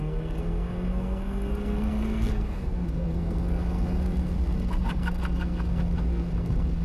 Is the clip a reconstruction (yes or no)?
yes